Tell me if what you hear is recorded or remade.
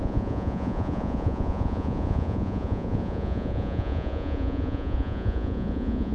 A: remade